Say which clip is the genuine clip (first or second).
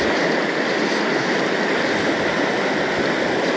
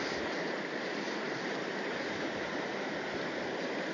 first